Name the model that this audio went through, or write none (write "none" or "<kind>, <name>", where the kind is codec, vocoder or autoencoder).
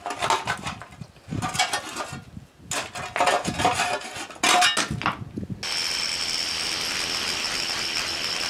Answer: none